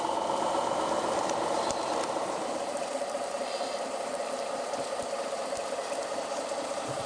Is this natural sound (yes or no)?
no